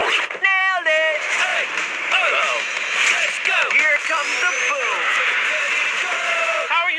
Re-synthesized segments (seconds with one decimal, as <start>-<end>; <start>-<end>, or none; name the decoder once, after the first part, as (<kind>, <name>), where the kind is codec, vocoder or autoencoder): 0.0-0.6 (vocoder, BigVGAN v2); 1.5-2.4; 5.1-6.6